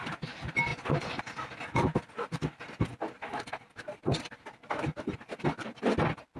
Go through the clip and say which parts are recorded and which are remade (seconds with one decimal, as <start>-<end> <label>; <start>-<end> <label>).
0.0-0.7 recorded; 0.7-1.2 remade; 1.2-6.4 recorded